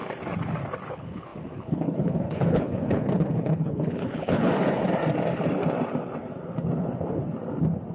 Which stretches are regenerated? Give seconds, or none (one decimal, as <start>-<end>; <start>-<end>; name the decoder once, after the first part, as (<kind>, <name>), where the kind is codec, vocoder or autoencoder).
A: 0.9-4.5 (codec, HILCodec)